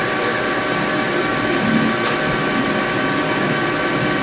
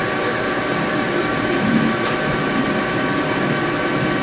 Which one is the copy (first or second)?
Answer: second